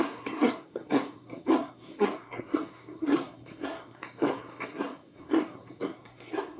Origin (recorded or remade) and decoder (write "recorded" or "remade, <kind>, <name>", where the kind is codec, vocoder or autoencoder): remade, codec, SNAC